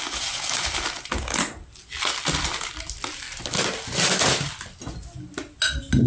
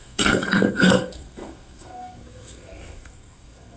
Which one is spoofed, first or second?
second